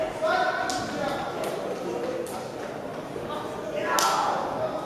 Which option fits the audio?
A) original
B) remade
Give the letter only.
A